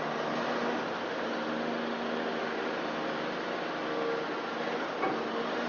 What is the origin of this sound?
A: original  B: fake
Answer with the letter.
A